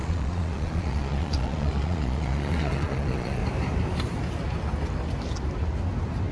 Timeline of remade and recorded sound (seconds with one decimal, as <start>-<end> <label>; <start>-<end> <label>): 0.0-3.4 remade; 3.4-6.3 recorded

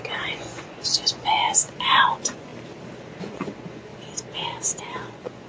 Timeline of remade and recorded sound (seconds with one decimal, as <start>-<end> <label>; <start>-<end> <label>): 0.0-2.5 remade; 2.5-3.2 recorded; 3.2-3.9 remade; 3.9-4.8 recorded; 4.8-5.5 remade